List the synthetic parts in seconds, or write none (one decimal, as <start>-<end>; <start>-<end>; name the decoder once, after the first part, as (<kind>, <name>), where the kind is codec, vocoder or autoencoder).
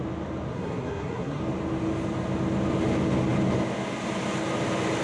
0.5-1.4 (codec, SNAC)